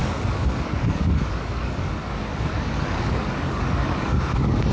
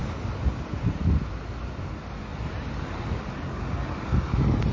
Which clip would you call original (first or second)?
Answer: second